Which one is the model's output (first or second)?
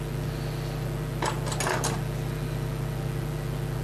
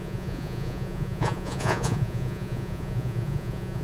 second